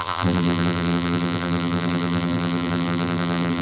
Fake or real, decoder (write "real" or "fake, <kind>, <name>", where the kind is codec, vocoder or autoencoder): fake, vocoder, BigVGAN v2